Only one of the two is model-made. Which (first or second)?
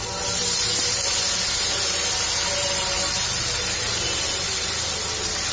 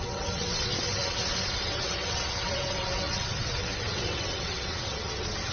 second